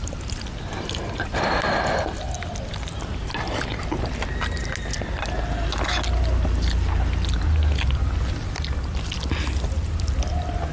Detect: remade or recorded recorded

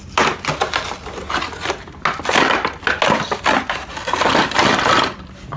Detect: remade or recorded recorded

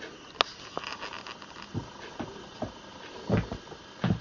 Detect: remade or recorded recorded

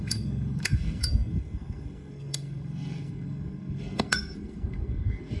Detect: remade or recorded remade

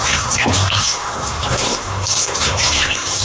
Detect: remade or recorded remade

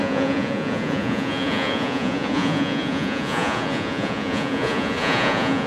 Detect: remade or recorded remade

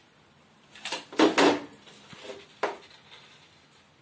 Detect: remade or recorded recorded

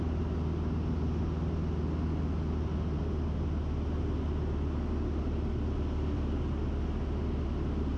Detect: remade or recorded recorded